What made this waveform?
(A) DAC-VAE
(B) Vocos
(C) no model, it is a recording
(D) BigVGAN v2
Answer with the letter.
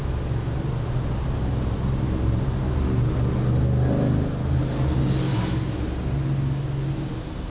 C